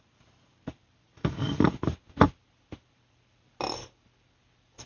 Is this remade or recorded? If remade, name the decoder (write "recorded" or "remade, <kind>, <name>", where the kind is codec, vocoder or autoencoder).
recorded